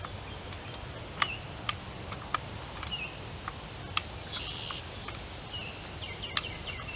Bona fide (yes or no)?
yes